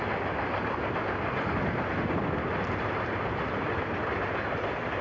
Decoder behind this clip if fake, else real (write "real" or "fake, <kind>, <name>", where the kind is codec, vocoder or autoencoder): real